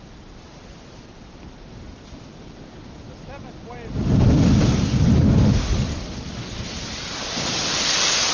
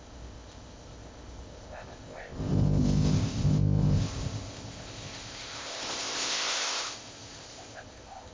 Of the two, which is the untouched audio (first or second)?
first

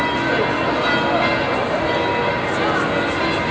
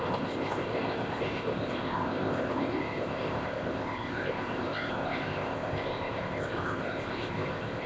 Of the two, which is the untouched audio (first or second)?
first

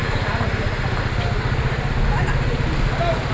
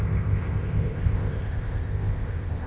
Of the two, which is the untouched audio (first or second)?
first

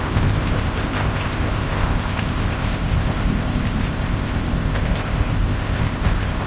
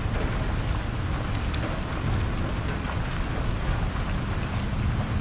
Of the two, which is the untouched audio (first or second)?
second